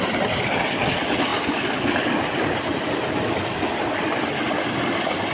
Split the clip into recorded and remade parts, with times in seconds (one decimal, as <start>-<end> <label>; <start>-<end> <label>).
0.0-5.3 recorded